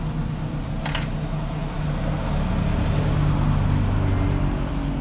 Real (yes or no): yes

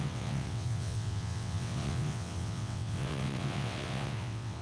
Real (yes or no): no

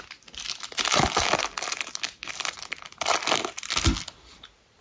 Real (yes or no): yes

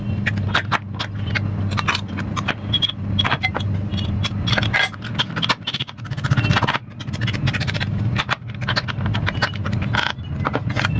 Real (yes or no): yes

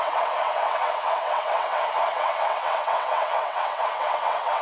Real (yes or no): no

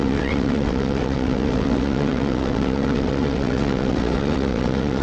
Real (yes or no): no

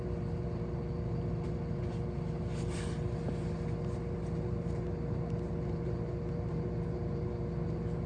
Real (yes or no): yes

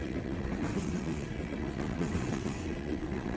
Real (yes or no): no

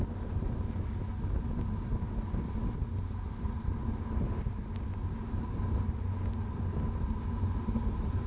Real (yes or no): yes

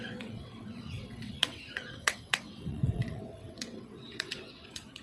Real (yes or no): no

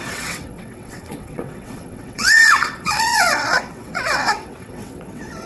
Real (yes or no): no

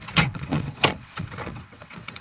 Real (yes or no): no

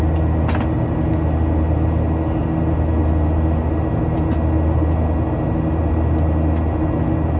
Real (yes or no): yes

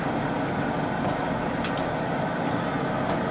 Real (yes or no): yes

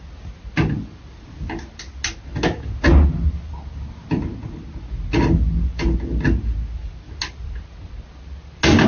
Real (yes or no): yes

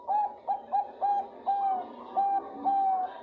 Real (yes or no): yes